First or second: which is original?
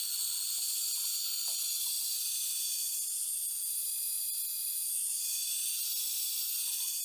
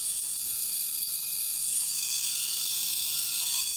first